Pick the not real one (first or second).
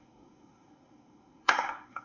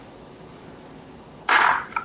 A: first